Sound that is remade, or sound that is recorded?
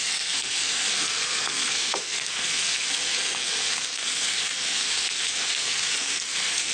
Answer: remade